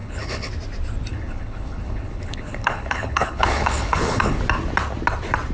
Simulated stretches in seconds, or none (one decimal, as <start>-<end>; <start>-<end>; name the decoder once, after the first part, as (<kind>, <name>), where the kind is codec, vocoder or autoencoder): 0.0-0.5 (codec, HILCodec); 1.1-4.4